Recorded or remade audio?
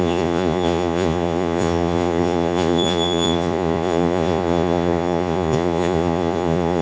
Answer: remade